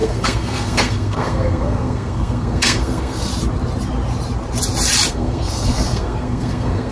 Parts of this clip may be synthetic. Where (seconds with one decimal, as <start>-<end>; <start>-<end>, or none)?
0.0-3.3; 5.1-6.9